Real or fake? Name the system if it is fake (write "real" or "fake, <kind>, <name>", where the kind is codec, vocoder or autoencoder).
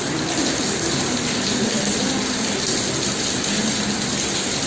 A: real